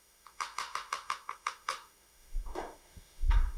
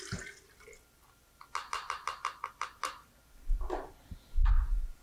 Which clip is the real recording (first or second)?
second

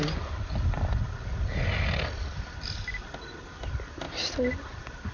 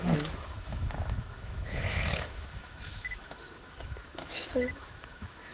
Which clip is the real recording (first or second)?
first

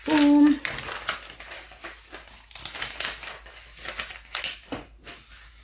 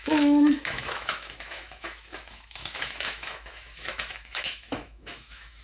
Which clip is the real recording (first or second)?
first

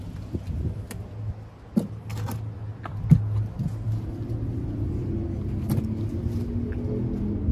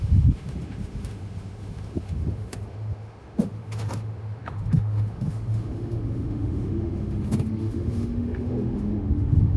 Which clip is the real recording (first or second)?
first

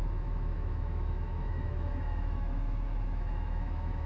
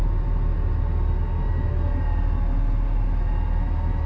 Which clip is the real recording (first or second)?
second